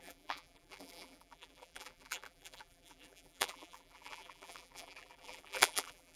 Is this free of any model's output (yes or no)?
no